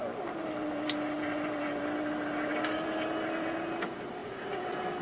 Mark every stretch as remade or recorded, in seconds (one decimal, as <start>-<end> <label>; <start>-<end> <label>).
0.0-5.0 recorded